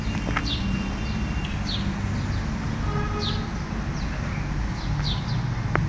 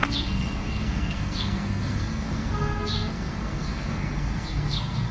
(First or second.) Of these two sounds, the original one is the first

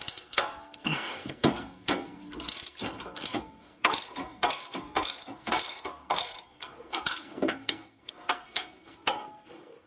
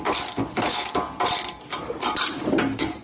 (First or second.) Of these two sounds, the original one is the second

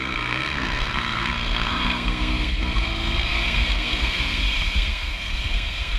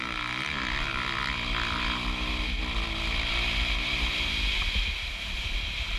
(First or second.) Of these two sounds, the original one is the second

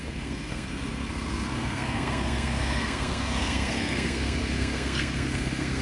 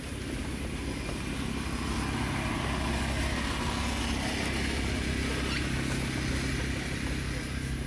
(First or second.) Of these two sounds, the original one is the second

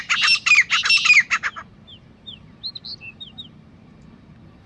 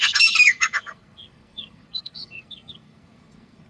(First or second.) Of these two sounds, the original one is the first